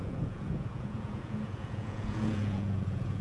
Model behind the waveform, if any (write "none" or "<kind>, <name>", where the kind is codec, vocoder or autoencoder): vocoder, Vocos